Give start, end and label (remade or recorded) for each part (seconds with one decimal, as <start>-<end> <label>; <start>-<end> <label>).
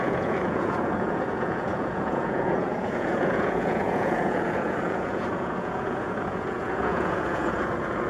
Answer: 0.0-8.1 remade